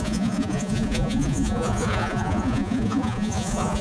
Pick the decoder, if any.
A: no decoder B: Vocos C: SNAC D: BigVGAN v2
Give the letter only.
B